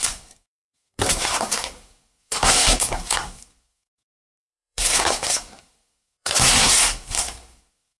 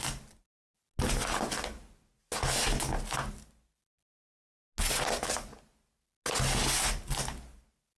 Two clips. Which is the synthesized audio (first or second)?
first